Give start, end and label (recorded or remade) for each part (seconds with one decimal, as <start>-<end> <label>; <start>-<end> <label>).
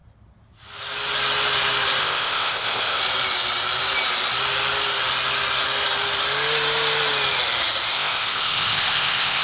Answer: 0.0-2.0 recorded; 2.0-3.0 remade; 3.0-7.9 recorded; 7.9-9.4 remade